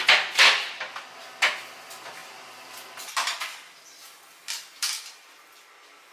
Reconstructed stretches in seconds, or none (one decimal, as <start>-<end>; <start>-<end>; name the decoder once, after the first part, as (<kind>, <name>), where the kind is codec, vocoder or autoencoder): 2.2-6.1 (vocoder, BigVGAN v2)